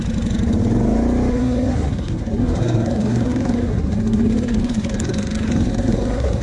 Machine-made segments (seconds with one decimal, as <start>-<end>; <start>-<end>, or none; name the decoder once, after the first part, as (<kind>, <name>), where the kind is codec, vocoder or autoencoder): 1.3-6.4 (codec, SNAC)

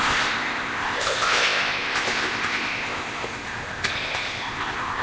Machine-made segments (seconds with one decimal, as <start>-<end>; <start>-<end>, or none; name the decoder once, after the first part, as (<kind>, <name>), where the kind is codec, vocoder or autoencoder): 0.0-5.0 (codec, ZipCodec)

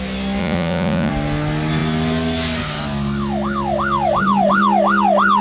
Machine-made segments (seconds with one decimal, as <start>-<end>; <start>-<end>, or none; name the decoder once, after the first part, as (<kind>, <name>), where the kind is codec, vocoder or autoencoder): 0.4-1.1 (vocoder, Vocos)

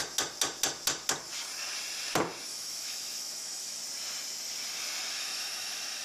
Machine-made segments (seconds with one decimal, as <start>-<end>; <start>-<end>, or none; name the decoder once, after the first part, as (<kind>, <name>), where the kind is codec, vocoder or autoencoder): 2.5-3.8 (autoencoder, DAC-VAE); 5.1-6.0

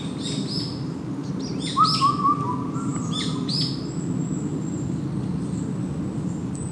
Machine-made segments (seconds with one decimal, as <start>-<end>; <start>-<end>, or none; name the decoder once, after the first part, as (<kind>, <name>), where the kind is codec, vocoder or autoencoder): 2.9-3.5 (vocoder, BigVGAN v2); 4.5-5.0

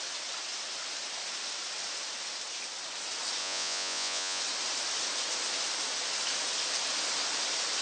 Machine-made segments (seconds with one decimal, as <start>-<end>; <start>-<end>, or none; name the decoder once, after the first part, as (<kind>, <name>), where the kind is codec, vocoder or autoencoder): 3.4-4.4 (vocoder, Vocos)

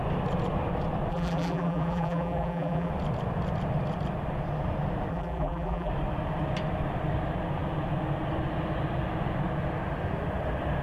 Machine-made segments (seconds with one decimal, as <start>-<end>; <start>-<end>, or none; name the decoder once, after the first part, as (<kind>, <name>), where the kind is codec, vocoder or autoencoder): 1.1-2.9 (vocoder, BigVGAN v2); 5.1-5.9